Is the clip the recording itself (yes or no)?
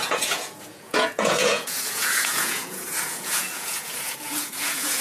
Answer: no